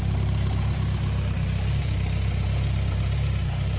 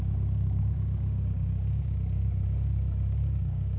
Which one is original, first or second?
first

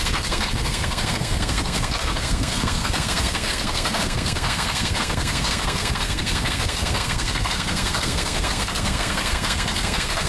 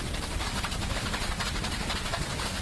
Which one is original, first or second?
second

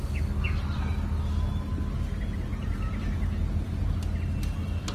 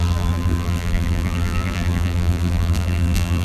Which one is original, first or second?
first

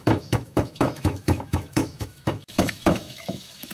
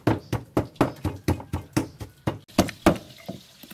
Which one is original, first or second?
second